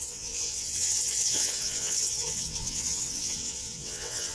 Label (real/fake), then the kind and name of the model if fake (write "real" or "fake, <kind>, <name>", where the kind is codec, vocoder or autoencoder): fake, vocoder, WaveNeXt